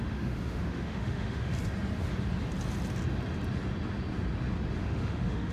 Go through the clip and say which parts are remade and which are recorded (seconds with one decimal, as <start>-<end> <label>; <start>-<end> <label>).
0.0-1.5 remade; 1.5-4.8 recorded; 4.8-5.5 remade